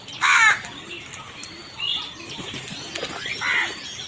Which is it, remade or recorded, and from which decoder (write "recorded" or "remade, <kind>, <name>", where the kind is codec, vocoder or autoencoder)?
recorded